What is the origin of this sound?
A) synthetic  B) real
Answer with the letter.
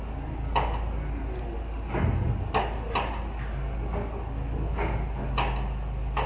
B